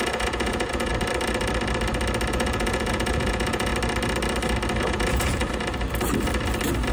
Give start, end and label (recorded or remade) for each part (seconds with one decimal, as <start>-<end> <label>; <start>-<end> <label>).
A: 0.0-0.9 remade; 0.9-2.3 recorded; 2.3-3.7 remade; 3.7-4.8 recorded; 4.8-5.4 remade; 5.4-6.9 recorded

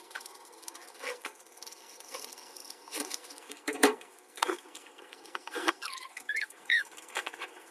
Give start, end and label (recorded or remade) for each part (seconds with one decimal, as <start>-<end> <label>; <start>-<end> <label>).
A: 0.0-7.7 remade

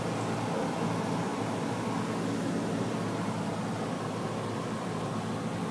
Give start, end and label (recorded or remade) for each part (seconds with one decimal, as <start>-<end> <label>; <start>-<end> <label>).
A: 0.0-5.7 recorded